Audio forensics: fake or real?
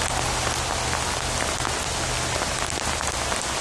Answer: real